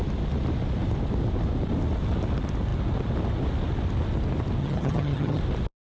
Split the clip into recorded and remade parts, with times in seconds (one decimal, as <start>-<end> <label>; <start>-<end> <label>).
0.0-4.6 recorded; 4.6-5.4 remade; 5.4-5.9 recorded

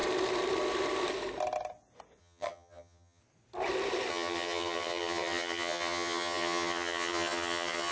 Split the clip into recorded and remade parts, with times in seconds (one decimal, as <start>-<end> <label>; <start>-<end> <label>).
0.0-2.2 recorded; 2.2-3.2 remade; 3.2-4.1 recorded; 4.1-7.9 remade